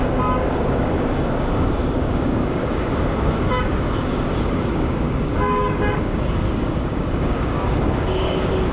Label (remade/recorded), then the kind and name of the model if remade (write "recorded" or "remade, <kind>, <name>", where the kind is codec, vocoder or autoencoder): remade, codec, DAC